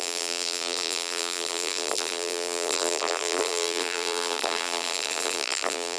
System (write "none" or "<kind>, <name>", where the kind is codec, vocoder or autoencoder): vocoder, BigVGAN v2